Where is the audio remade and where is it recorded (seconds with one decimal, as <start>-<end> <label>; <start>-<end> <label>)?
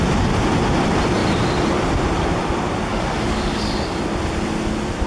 0.0-2.9 recorded; 2.9-4.0 remade; 4.0-5.1 recorded